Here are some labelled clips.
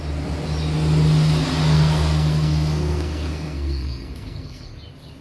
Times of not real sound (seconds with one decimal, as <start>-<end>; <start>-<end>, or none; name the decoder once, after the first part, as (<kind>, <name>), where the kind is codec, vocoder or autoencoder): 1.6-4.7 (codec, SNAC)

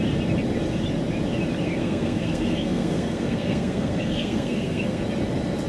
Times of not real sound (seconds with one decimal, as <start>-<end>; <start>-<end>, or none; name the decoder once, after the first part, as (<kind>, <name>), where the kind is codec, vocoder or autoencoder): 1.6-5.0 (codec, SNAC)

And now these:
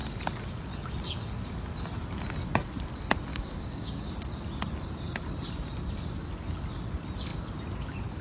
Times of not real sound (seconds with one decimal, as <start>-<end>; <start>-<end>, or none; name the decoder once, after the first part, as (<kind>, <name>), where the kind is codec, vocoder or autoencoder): 3.3-4.1 (codec, DAC)

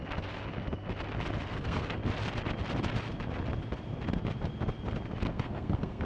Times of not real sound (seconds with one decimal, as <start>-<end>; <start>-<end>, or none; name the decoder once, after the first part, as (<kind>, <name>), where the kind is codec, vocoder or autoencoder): 1.4-2.0 (codec, SNAC); 5.3-6.1